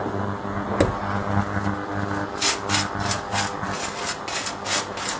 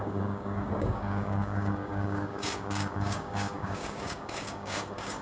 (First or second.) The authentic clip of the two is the first